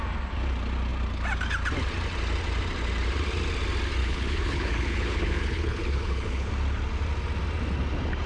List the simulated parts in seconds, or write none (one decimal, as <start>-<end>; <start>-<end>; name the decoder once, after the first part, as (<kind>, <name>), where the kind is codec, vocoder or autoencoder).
4.0-6.5 (codec, HILCodec)